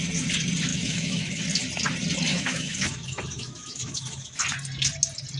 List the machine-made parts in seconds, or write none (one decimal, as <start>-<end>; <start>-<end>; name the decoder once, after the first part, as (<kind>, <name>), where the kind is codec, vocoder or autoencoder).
0.7-1.4 (autoencoder, DAC-VAE); 2.3-4.4